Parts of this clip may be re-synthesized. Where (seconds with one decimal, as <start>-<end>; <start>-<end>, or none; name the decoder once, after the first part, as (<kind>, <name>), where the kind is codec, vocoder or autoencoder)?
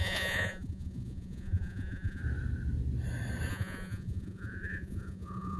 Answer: 0.0-2.2 (vocoder, Vocos); 3.5-5.6